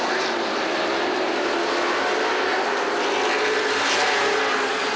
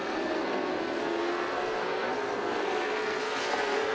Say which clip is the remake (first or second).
second